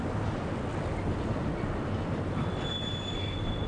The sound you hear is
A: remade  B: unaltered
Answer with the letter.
B